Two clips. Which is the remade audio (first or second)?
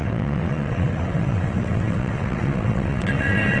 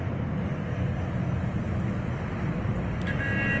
first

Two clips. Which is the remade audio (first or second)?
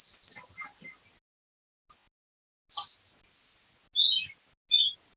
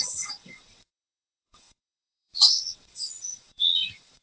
second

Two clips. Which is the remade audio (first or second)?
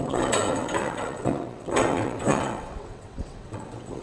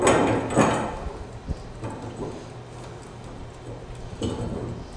first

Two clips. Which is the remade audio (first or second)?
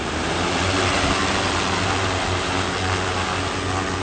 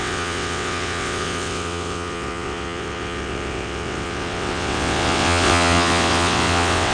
second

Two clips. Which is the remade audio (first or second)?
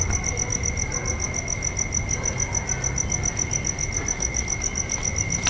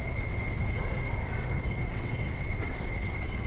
second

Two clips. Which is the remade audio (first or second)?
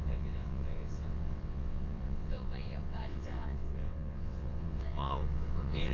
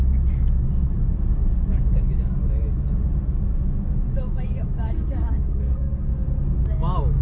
first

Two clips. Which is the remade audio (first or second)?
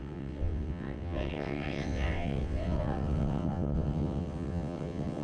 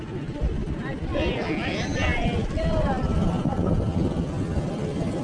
first